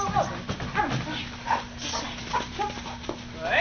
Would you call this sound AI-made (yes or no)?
no